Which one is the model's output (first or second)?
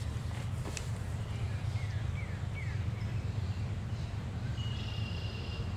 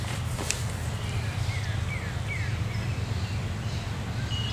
first